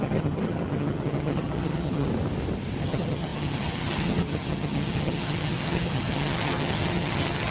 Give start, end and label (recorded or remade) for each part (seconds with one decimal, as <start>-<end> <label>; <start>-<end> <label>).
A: 0.0-2.1 remade; 2.1-2.8 recorded; 2.8-7.5 remade